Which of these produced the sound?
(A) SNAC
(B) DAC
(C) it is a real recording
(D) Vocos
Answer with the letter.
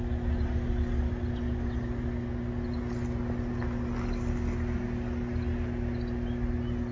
C